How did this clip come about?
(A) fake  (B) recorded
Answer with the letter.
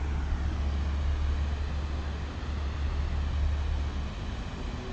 B